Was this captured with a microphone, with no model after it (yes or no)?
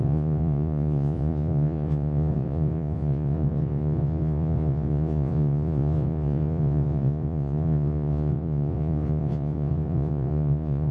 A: no